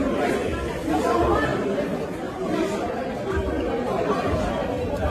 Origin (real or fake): real